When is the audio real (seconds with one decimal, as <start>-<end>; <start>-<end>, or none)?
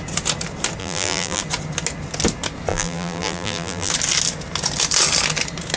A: 0.0-0.8; 1.4-2.7; 3.9-5.8